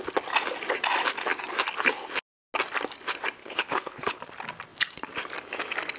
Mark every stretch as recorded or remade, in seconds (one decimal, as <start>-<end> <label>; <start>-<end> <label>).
0.0-3.4 recorded; 3.4-4.2 remade; 4.2-6.0 recorded